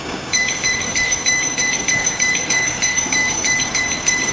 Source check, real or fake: fake